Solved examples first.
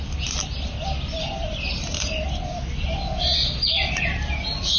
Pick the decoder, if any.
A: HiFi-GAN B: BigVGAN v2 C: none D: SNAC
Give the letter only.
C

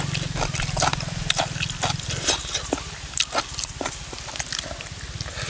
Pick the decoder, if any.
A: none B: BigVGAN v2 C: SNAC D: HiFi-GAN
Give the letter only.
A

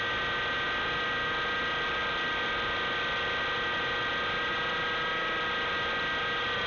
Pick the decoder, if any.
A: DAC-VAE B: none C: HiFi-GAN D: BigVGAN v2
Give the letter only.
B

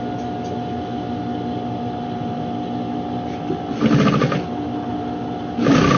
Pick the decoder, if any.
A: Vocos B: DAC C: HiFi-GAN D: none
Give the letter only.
D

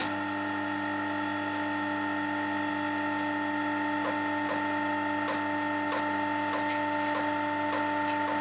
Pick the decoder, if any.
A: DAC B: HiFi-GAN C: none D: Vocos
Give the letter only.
C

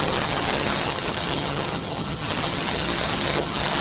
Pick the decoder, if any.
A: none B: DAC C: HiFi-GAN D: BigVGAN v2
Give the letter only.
C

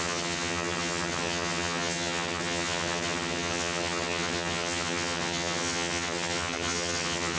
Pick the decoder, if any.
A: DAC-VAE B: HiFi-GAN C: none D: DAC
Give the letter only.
B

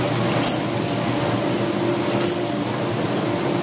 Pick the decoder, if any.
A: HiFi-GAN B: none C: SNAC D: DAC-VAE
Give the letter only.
B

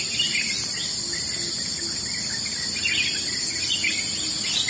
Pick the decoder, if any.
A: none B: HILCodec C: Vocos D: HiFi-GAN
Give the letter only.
A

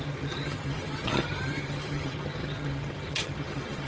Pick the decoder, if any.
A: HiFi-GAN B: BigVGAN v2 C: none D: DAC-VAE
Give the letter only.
A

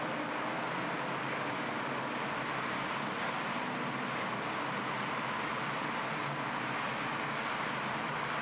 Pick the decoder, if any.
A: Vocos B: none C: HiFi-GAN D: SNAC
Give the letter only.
B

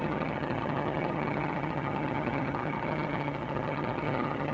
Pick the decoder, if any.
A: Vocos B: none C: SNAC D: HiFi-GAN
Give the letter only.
D